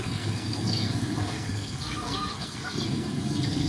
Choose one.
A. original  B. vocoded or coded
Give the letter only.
B